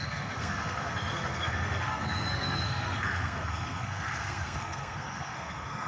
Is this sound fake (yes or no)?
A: yes